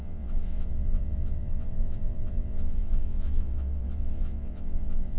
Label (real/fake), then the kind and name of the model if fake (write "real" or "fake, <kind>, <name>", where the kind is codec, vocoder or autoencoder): fake, vocoder, WaveNeXt